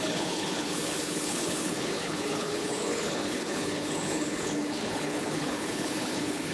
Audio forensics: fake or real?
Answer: fake